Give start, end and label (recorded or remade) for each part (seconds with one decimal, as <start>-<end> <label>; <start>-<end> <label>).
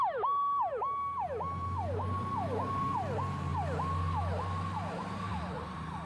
0.0-6.1 recorded